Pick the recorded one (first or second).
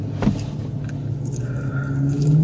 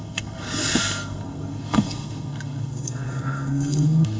first